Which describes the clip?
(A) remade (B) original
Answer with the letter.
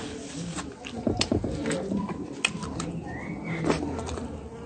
B